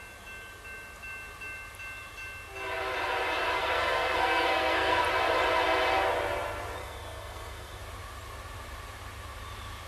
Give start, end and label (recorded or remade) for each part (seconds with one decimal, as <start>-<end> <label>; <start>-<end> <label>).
0.0-3.6 recorded; 3.6-5.0 remade; 5.0-6.8 recorded; 6.8-7.8 remade; 7.8-9.9 recorded